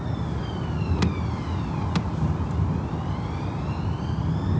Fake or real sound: real